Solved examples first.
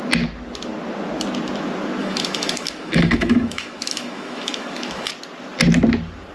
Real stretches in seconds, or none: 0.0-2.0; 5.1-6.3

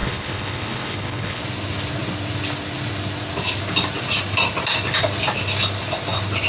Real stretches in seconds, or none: 1.4-6.5

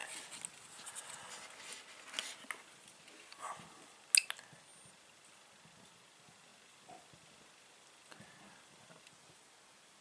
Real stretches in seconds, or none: 0.0-10.0

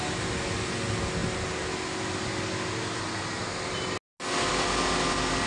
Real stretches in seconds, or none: 0.0-5.5

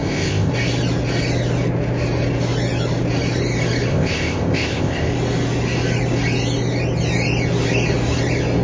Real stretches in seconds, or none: 0.5-3.9; 5.1-8.6

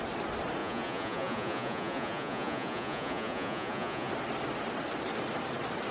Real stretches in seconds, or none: 0.0-0.6; 4.1-5.9